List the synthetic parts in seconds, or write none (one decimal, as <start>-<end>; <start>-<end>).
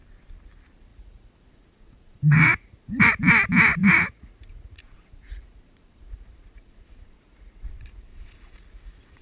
0.9-3.1; 3.8-9.2